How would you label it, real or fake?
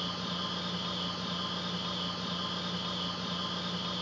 real